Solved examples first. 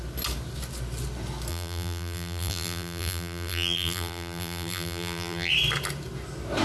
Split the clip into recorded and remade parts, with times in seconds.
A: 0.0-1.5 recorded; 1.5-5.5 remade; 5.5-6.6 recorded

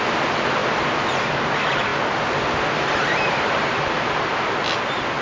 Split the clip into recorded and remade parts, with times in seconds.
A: 0.0-5.2 recorded

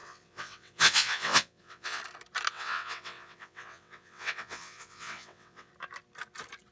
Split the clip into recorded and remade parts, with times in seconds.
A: 0.0-2.0 remade; 2.0-2.5 recorded; 2.5-5.7 remade; 5.7-6.7 recorded